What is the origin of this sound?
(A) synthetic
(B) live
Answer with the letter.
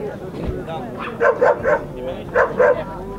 B